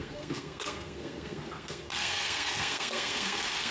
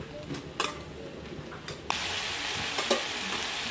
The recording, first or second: second